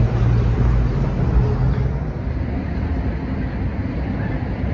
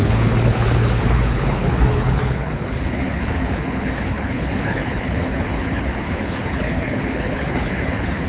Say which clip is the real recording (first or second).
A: first